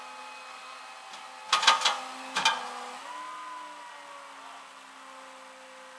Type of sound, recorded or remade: recorded